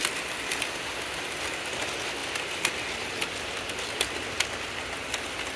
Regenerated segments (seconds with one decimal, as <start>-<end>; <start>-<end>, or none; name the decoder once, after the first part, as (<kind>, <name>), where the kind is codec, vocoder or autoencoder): 0.0-0.9 (vocoder, BigVGAN v2)